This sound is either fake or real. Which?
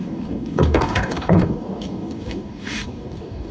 fake